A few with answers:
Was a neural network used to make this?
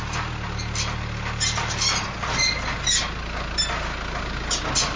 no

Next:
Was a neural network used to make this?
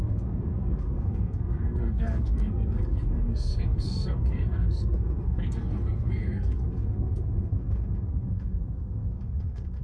yes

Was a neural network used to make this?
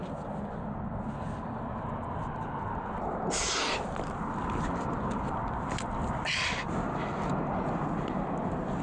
no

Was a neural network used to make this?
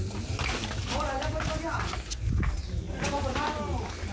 no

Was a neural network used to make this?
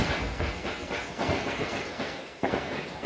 yes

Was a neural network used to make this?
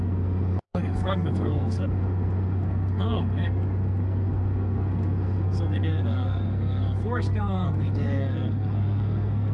yes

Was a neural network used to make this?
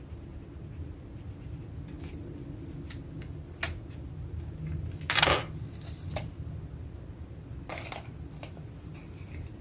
no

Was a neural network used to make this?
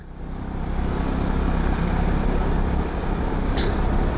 no